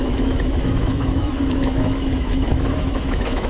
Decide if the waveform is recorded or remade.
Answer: remade